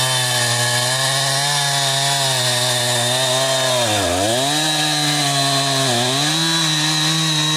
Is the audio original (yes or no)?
yes